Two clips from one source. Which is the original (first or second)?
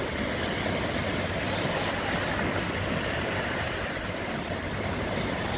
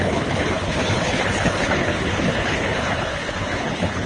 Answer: first